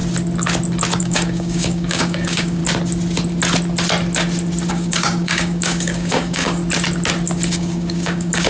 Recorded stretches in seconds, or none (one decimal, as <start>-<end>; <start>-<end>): 0.0-1.0; 2.6-4.7; 6.6-7.5